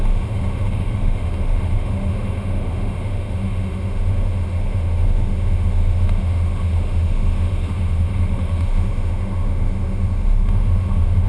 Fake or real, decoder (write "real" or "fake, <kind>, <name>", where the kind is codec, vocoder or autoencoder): fake, autoencoder, DAC-VAE